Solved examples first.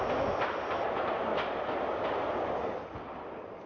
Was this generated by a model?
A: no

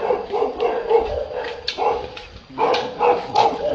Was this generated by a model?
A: yes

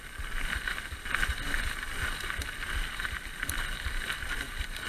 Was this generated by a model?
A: no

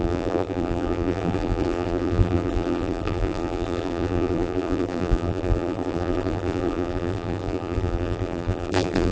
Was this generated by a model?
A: yes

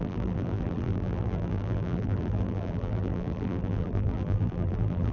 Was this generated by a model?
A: yes